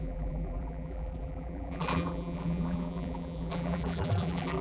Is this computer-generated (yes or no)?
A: yes